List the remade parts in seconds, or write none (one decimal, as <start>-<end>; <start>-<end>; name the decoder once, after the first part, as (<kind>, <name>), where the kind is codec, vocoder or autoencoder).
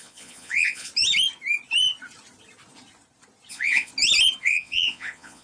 0.0-0.9 (vocoder, Vocos); 3.5-3.9; 4.4-5.4